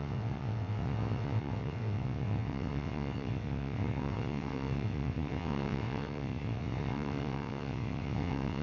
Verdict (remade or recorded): remade